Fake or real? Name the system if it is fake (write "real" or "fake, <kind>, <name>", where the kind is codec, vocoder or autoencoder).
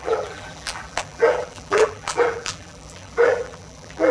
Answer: fake, vocoder, BigVGAN v2